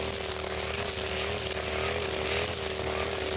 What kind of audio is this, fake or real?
real